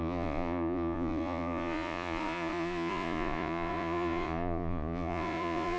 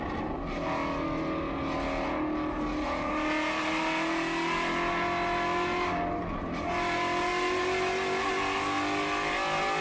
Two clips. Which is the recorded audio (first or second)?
second